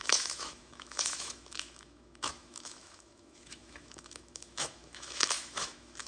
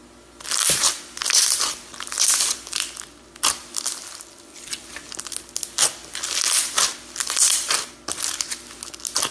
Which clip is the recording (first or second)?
second